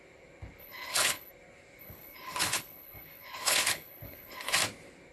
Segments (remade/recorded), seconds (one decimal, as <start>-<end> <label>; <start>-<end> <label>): 0.0-0.6 recorded; 0.6-1.3 remade; 1.3-1.8 recorded; 1.8-4.6 remade; 4.6-5.1 recorded